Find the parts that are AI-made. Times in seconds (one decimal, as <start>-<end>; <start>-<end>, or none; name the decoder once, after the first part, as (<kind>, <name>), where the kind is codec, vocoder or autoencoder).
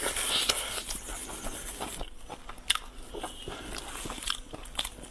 none